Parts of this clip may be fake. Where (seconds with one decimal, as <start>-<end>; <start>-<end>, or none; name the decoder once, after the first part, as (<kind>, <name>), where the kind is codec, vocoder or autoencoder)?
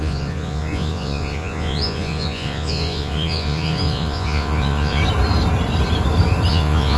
0.0-5.0 (vocoder, Vocos); 6.5-7.0